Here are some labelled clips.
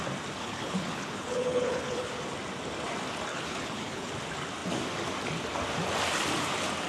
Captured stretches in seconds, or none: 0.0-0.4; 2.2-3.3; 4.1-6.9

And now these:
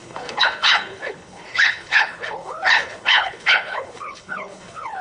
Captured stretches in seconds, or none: none